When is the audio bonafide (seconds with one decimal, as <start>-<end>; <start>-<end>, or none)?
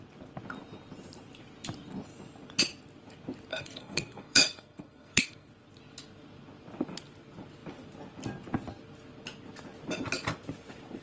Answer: 0.0-3.5; 5.5-11.0